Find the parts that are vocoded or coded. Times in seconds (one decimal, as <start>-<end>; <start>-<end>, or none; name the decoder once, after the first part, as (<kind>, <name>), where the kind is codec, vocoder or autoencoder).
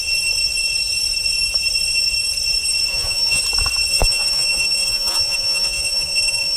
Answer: 2.9-3.4 (vocoder, Vocos); 3.9-6.6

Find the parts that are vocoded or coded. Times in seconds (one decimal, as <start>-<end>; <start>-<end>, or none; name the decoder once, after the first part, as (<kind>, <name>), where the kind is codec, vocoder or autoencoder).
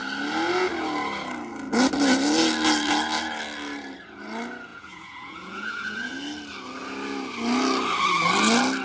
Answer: 4.7-6.1 (vocoder, Vocos)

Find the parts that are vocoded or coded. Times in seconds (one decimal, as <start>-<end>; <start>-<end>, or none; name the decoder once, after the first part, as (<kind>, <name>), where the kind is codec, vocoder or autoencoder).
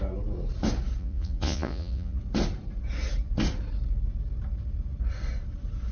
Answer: 1.0-2.2 (vocoder, Vocos)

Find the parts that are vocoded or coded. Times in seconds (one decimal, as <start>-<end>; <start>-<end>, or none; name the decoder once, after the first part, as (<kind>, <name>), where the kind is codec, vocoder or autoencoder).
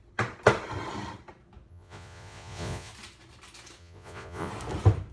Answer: 1.7-2.9 (vocoder, Vocos); 3.8-4.5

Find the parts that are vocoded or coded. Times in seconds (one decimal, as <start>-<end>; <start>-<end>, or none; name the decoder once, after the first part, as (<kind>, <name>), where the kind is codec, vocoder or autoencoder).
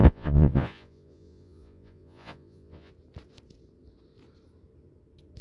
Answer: 0.0-2.9 (vocoder, Vocos)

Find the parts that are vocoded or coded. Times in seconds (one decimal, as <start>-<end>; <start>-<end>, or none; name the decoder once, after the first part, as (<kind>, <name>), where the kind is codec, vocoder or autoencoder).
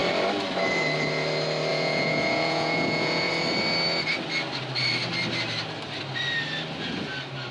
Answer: 1.7-3.3 (vocoder, Vocos)